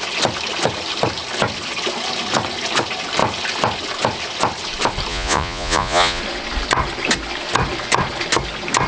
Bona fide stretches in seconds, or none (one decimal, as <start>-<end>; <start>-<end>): 0.0-5.1; 6.2-8.9